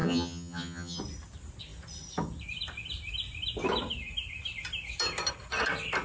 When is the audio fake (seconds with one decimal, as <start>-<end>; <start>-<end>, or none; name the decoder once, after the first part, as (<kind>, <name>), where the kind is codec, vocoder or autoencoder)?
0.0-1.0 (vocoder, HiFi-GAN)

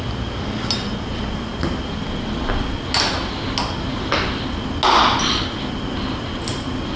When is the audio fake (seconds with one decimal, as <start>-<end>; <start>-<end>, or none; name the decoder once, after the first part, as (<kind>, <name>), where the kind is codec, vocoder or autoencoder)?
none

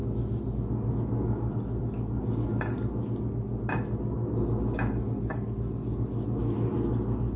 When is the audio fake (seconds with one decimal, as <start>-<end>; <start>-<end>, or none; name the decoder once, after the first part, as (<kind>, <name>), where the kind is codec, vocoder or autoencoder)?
none